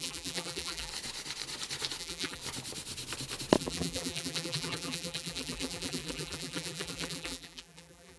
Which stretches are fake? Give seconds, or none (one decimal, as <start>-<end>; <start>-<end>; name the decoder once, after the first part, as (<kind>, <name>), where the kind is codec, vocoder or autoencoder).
0.0-0.9 (vocoder, BigVGAN v2); 2.0-2.4; 3.6-8.2